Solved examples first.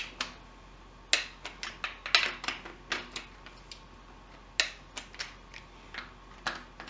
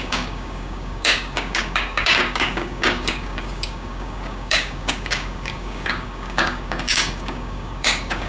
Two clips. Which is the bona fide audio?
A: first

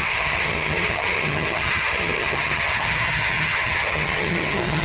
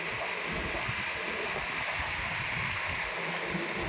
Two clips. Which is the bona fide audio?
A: second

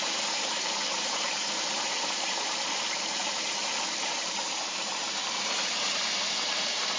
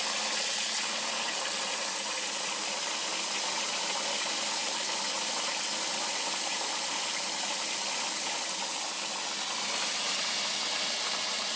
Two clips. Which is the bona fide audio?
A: second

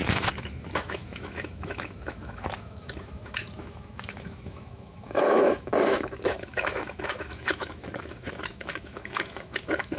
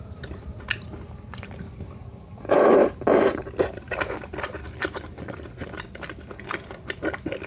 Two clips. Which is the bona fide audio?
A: second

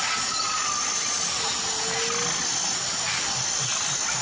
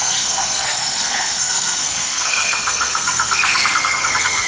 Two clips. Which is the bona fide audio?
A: first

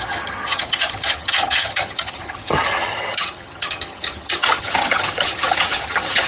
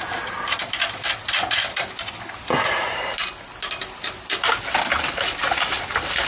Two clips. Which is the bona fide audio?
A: second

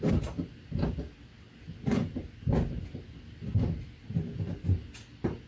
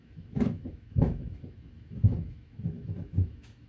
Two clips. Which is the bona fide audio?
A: first